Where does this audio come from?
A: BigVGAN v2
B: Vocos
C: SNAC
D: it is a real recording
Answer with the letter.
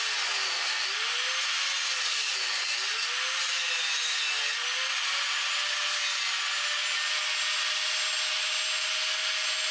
D